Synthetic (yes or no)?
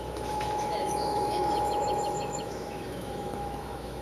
yes